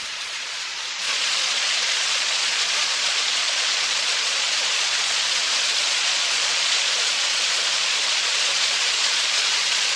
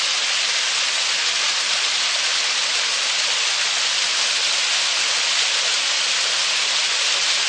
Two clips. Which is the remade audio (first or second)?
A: first